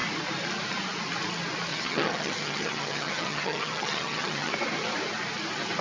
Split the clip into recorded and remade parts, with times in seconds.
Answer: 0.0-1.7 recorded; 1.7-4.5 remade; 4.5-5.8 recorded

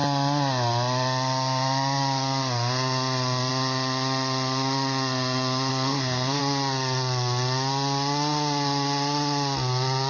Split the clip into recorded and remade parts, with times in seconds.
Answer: 0.0-5.7 recorded; 5.7-6.4 remade; 6.4-10.1 recorded

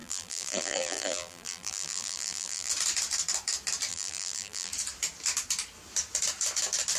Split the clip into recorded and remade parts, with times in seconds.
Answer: 0.0-2.7 remade; 2.7-3.9 recorded; 3.9-4.7 remade; 4.7-7.0 recorded